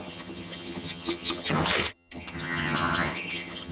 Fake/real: fake